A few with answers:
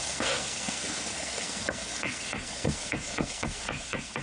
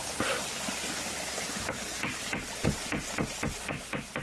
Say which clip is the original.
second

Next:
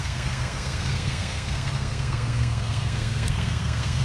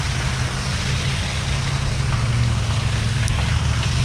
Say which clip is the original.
second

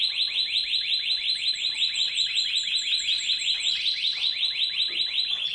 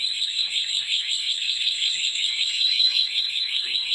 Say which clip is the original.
first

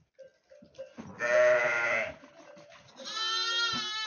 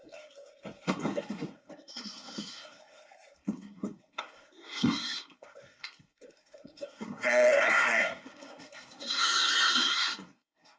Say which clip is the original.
first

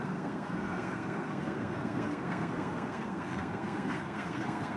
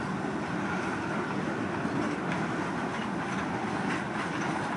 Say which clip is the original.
second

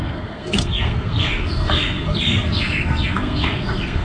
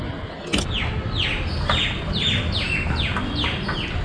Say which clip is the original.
second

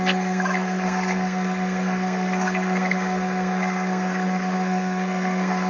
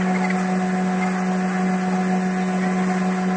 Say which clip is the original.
second